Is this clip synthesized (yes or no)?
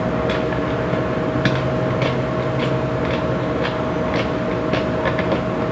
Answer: no